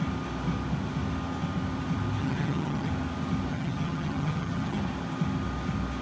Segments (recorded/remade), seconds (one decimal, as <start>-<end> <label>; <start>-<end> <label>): 0.0-2.2 recorded; 2.2-2.9 remade; 2.9-3.5 recorded; 3.5-4.8 remade; 4.8-6.0 recorded